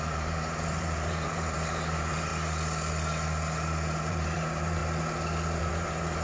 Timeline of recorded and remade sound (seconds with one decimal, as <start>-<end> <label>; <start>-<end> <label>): 0.0-2.3 remade; 2.3-4.1 recorded; 4.1-4.8 remade; 4.8-5.6 recorded; 5.6-6.2 remade